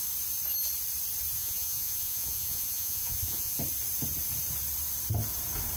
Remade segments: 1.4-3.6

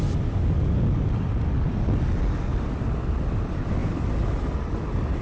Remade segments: none